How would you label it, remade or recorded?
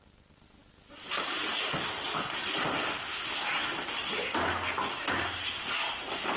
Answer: recorded